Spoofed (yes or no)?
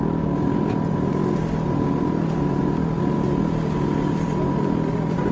no